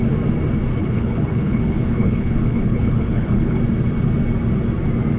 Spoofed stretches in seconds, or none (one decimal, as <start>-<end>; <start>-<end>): 0.8-3.6